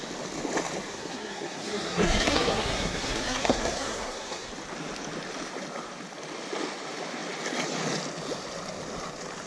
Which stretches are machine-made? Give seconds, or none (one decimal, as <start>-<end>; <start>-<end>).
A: 0.9-4.5